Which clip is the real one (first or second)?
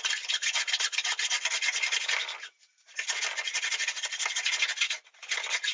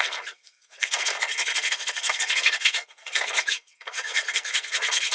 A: first